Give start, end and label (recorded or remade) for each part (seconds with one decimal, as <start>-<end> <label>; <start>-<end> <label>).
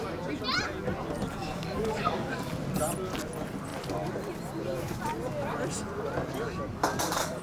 0.0-1.4 recorded; 1.4-2.5 remade; 2.5-6.7 recorded; 6.7-7.4 remade